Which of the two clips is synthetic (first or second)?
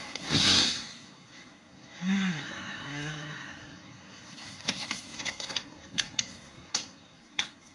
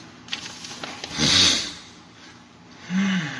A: first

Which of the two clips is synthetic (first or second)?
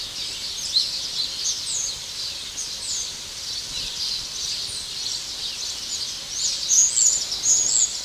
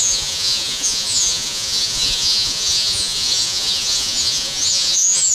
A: second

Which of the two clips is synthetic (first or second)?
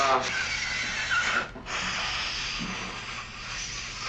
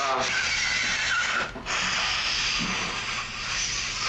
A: second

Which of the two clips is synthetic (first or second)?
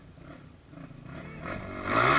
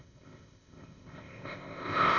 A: second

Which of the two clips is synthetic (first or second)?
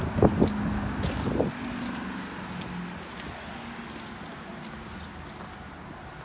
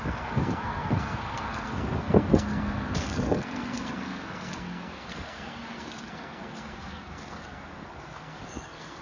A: second